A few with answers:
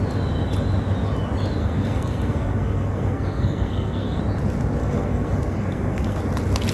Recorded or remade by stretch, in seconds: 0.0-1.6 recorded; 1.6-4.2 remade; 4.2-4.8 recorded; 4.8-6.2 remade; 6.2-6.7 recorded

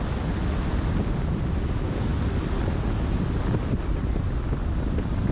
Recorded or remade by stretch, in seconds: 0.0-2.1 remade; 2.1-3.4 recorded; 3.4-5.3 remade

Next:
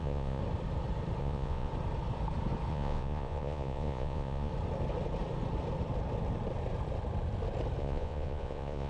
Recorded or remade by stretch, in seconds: 0.0-0.4 remade; 0.4-1.2 recorded; 1.2-1.7 remade; 1.7-2.7 recorded; 2.7-4.5 remade; 4.5-7.8 recorded; 7.8-8.9 remade

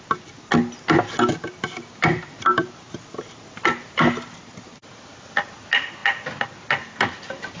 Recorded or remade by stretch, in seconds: 0.0-7.6 recorded